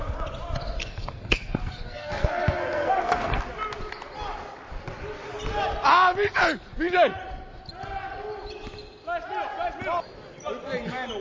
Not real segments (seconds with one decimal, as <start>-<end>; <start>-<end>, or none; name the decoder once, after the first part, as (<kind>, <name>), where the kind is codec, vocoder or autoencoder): 0.8-3.4 (codec, SNAC)